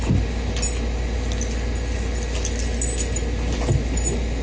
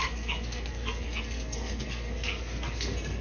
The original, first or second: first